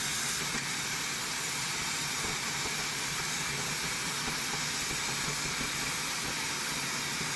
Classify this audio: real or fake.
real